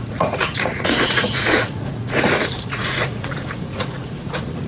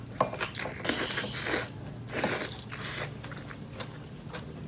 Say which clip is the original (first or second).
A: second